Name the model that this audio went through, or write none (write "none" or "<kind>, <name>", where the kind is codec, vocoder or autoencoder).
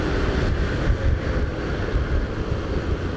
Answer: none